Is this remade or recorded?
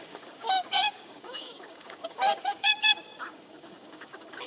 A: remade